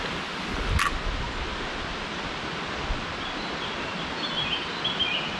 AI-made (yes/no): no